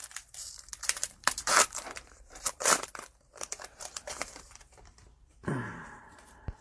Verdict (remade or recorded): remade